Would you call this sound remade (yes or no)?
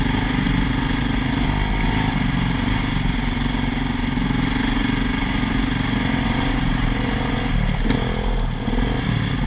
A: no